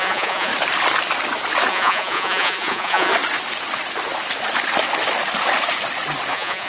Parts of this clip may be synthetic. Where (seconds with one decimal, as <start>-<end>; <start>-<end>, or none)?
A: 0.0-0.5; 1.7-3.1; 6.3-6.7